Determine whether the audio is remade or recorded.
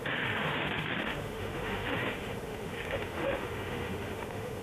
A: remade